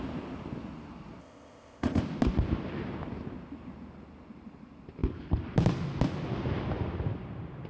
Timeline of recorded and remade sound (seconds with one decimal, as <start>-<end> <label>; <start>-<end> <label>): 0.0-1.2 recorded; 1.2-2.0 remade; 2.0-7.7 recorded